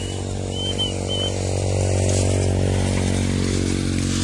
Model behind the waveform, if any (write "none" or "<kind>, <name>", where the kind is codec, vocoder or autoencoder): none